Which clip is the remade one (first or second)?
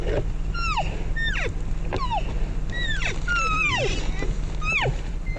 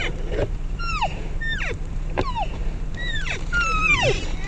second